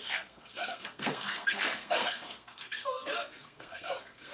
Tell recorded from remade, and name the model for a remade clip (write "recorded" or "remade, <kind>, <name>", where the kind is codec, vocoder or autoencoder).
remade, codec, SNAC